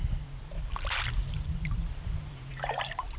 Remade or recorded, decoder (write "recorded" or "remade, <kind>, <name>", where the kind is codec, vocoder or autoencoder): recorded